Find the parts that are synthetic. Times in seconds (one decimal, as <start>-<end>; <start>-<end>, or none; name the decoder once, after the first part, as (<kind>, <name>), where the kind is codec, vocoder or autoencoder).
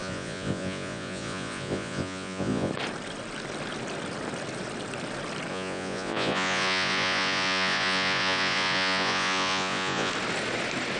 0.0-2.7 (vocoder, Vocos); 5.5-10.1